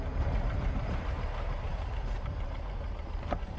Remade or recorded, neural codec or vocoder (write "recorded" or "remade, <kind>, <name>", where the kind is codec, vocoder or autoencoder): remade, vocoder, BigVGAN v2